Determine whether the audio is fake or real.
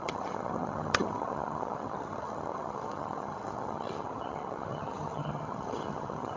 fake